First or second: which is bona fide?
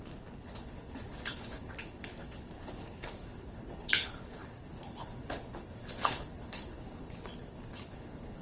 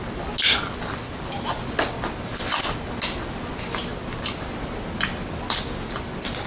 second